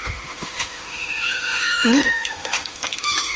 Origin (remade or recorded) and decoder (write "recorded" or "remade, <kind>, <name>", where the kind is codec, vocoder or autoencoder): remade, autoencoder, DAC-VAE